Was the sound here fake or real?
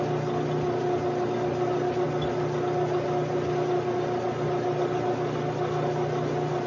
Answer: real